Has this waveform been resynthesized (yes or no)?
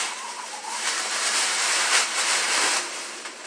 yes